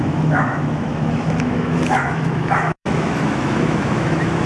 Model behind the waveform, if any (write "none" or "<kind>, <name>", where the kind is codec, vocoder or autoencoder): autoencoder, DAC-VAE